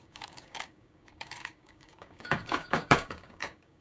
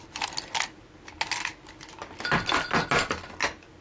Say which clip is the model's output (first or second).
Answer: first